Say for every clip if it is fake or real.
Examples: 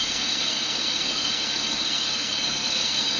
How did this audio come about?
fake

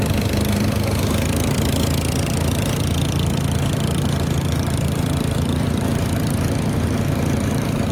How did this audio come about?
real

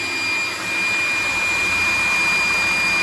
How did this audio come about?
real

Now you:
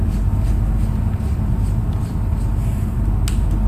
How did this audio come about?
real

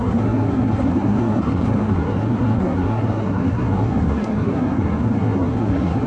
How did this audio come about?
fake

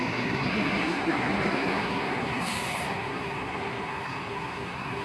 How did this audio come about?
fake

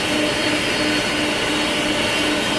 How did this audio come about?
real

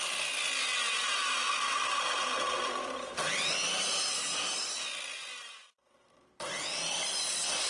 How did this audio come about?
real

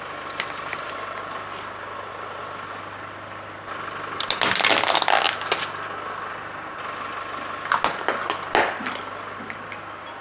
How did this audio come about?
real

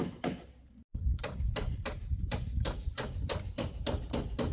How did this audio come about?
real